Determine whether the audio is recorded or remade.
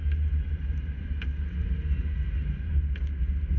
recorded